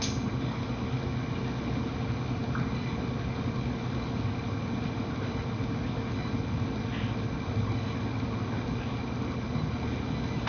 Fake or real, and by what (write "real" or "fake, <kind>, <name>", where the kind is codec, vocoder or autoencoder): real